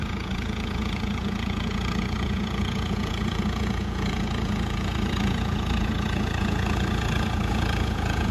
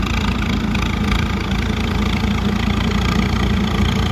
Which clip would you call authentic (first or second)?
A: second